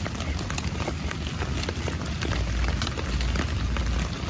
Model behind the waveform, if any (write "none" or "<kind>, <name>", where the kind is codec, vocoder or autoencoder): none